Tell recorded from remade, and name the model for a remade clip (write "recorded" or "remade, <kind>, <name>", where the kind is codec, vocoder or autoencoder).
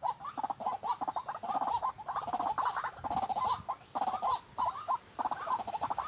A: recorded